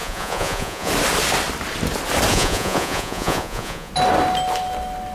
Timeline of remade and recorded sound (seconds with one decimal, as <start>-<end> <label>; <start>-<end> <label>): 0.0-0.9 remade; 0.9-2.3 recorded; 2.3-3.9 remade; 3.9-5.1 recorded